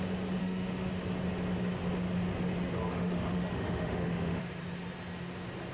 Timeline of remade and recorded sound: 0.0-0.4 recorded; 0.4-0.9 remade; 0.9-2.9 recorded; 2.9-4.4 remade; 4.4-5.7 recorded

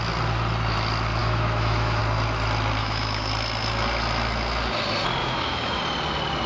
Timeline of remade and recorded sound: 0.0-1.2 recorded; 1.2-2.0 remade; 2.0-2.8 recorded; 2.8-3.3 remade; 3.3-5.2 recorded; 5.2-5.8 remade; 5.8-6.5 recorded